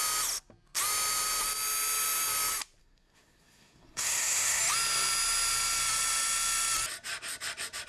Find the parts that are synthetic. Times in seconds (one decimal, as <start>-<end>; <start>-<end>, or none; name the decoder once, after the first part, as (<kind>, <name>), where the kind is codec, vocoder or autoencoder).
2.8-4.6 (codec, SNAC)